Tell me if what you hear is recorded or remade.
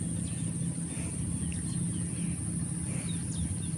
recorded